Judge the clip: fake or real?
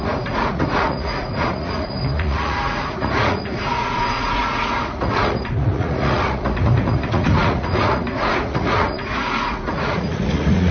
fake